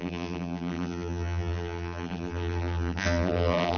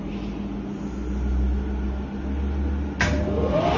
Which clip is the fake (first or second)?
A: first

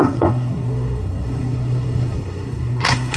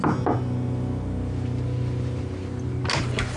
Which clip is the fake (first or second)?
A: first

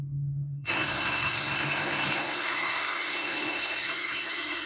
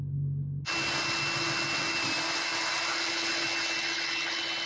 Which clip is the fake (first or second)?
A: first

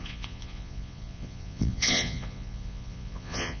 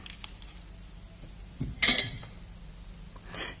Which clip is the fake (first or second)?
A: first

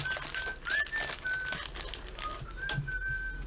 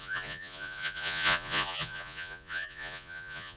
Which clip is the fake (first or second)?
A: second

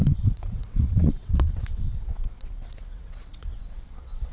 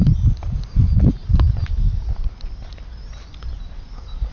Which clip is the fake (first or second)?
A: first